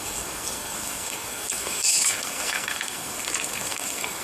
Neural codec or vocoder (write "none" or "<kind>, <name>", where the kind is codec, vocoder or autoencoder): codec, SNAC